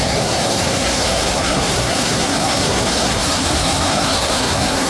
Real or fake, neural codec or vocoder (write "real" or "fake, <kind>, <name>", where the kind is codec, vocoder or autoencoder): fake, codec, SNAC